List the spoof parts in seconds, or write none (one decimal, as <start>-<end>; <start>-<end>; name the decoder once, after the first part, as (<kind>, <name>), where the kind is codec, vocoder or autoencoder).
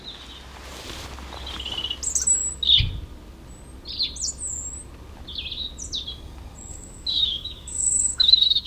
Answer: 6.7-8.7 (codec, DAC)